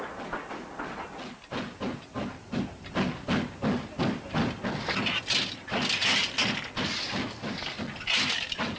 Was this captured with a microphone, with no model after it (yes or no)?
yes